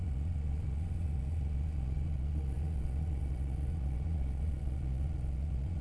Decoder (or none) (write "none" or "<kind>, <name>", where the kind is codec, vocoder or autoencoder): vocoder, Vocos